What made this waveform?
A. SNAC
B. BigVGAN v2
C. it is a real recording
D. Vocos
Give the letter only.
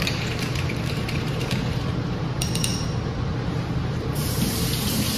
B